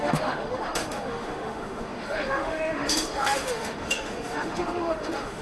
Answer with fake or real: fake